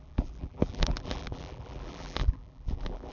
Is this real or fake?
fake